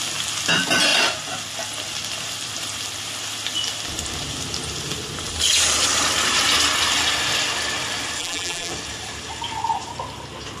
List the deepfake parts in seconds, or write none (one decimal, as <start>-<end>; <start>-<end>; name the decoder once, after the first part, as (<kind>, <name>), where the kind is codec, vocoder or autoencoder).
8.2-8.7 (vocoder, BigVGAN v2)